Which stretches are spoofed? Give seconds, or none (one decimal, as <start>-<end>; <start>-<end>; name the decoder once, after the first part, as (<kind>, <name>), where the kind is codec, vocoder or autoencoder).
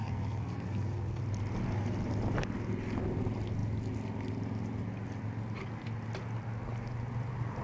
0.0-1.2 (codec, SNAC)